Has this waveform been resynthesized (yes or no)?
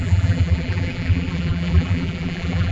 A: yes